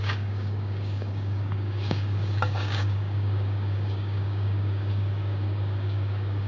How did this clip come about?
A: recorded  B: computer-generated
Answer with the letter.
B